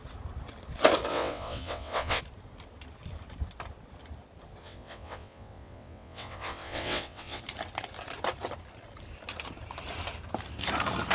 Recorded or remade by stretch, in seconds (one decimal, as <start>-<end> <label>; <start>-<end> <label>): 0.0-1.1 recorded; 1.1-2.2 remade; 2.2-4.6 recorded; 4.6-7.4 remade; 7.4-11.1 recorded